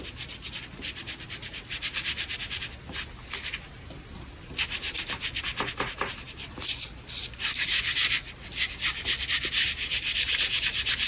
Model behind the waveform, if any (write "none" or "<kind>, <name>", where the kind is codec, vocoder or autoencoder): none